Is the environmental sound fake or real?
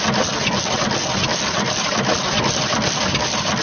real